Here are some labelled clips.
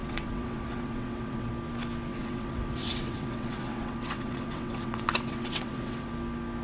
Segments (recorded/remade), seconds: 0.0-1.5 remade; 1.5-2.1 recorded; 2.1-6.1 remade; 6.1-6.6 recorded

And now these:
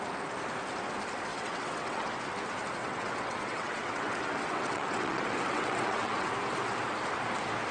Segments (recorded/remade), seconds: 0.0-1.3 recorded; 1.3-2.1 remade; 2.1-2.8 recorded; 2.8-6.3 remade; 6.3-7.7 recorded

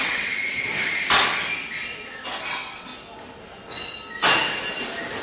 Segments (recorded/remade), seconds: 0.0-0.7 remade; 0.7-2.5 recorded; 2.5-2.9 remade; 2.9-5.2 recorded